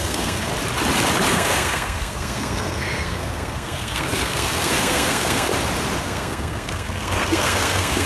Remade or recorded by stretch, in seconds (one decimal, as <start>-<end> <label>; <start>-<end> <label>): 0.0-0.5 remade; 0.5-1.3 recorded; 1.3-5.5 remade; 5.5-6.0 recorded; 6.0-8.1 remade